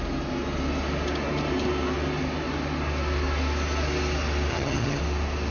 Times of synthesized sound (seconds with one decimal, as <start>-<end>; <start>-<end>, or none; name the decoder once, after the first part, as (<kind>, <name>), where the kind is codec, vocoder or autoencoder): 4.5-5.0 (vocoder, HiFi-GAN)